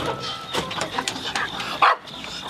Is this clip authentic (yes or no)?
no